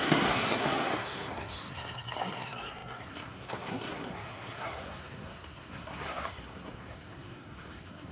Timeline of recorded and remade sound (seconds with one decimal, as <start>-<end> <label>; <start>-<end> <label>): 0.0-8.1 remade